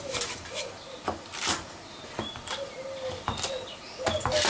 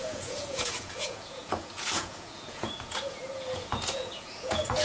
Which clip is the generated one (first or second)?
second